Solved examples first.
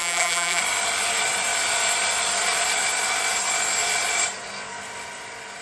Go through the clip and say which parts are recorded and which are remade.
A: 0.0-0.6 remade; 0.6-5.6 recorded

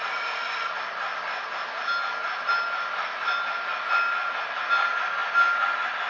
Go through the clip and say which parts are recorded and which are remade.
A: 0.0-6.1 recorded

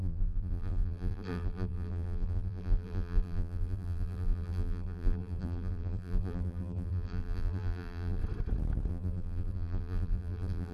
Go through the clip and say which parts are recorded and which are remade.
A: 0.0-8.2 remade; 8.2-8.9 recorded; 8.9-10.7 remade

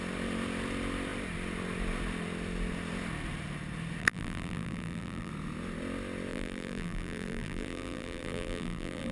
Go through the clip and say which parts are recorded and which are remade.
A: 0.0-4.0 recorded; 4.0-5.3 remade; 5.3-6.3 recorded; 6.3-9.1 remade

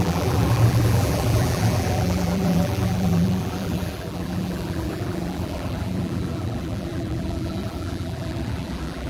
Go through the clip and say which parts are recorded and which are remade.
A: 0.0-9.1 remade

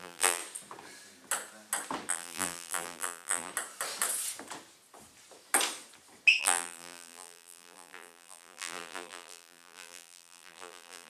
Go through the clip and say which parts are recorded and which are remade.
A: 0.0-0.4 remade; 0.4-2.1 recorded; 2.1-3.5 remade; 3.5-6.4 recorded; 6.4-11.1 remade